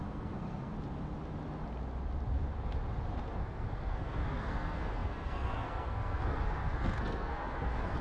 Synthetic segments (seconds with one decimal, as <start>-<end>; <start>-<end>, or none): 0.0-0.7; 3.3-8.0